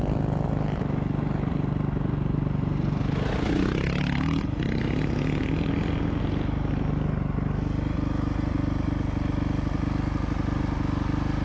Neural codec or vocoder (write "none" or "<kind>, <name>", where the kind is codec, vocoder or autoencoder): none